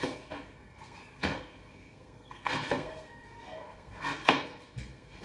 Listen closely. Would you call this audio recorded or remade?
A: remade